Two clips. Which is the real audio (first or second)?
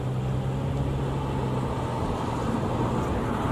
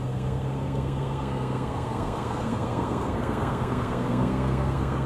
first